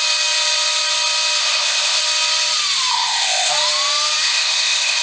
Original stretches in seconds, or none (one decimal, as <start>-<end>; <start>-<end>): 0.0-1.4; 2.0-2.9; 3.5-4.2